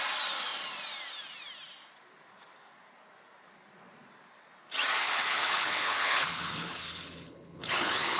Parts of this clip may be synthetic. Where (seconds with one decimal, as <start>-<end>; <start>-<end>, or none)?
5.0-8.2